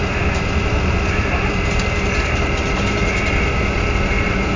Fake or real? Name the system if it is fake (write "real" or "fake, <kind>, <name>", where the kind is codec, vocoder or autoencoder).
fake, vocoder, BigVGAN v2